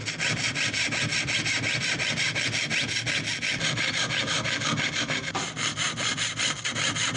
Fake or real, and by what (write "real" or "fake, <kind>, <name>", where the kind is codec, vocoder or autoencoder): real